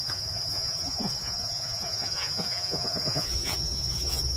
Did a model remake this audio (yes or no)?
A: yes